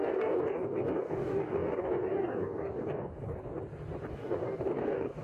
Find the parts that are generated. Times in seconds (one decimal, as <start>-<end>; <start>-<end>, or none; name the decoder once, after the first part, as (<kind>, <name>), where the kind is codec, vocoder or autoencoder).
0.0-3.5 (codec, DAC); 4.1-5.2